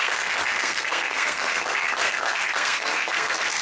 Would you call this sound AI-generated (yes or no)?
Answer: yes